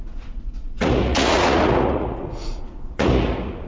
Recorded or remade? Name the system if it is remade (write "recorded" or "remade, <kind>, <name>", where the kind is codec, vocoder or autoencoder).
remade, vocoder, Vocos